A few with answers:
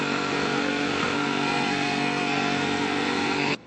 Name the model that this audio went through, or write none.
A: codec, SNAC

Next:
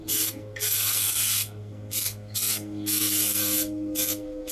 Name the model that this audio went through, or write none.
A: codec, SNAC